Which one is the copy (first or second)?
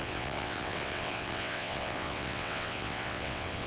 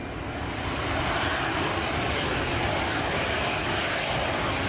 first